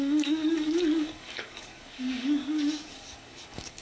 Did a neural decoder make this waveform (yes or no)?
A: yes